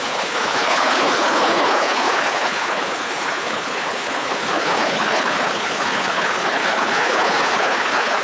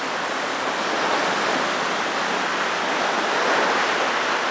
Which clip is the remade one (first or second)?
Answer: first